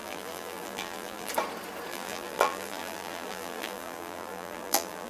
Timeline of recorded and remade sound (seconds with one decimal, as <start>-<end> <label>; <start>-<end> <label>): 0.0-1.3 remade; 1.3-1.9 recorded; 1.9-5.1 remade